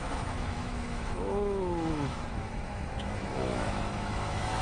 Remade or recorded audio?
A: remade